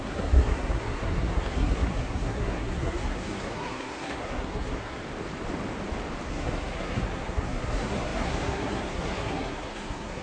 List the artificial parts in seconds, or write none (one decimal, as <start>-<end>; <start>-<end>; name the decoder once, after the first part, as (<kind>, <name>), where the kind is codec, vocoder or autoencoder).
0.0-5.0 (codec, SNAC); 6.3-10.2